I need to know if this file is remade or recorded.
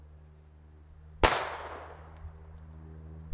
recorded